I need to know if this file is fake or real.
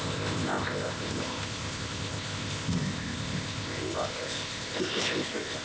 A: fake